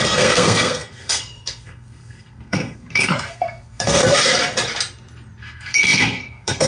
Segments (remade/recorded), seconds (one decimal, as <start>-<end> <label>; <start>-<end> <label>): 0.0-4.0 remade; 4.0-5.4 recorded; 5.4-6.7 remade